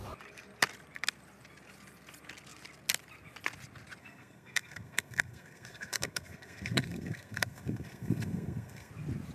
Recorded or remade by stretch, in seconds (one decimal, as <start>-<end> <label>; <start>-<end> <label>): 0.0-4.0 recorded; 4.0-8.9 remade; 8.9-9.3 recorded